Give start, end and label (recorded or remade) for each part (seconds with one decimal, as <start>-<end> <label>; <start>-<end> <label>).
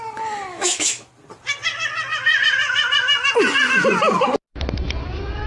0.0-0.5 recorded; 0.5-1.1 remade; 1.1-5.5 recorded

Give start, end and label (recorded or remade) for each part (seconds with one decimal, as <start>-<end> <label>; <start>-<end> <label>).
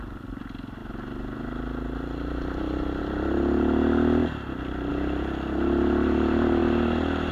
0.0-7.3 recorded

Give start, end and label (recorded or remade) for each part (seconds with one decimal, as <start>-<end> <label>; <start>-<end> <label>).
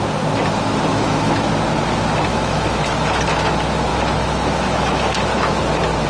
0.0-0.9 recorded; 0.9-1.5 remade; 1.5-2.3 recorded; 2.3-3.2 remade; 3.2-3.9 recorded; 3.9-5.6 remade; 5.6-6.1 recorded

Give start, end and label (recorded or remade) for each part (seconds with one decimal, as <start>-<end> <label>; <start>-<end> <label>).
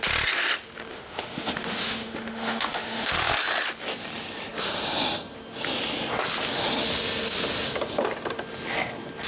0.0-0.9 recorded; 0.9-3.3 remade; 3.3-9.3 recorded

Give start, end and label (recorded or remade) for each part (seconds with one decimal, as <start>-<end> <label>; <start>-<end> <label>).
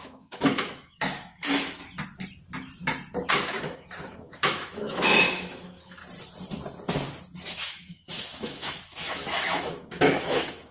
0.0-1.8 remade; 1.8-3.3 recorded; 3.3-6.0 remade; 6.0-7.5 recorded; 7.5-10.7 remade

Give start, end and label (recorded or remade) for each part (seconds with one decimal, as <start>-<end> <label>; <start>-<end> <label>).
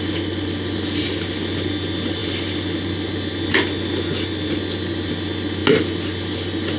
0.0-6.8 recorded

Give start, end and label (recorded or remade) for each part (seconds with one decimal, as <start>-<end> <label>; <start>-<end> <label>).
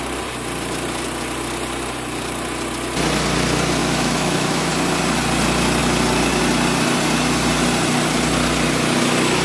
0.0-3.8 recorded; 3.8-4.7 remade; 4.7-9.4 recorded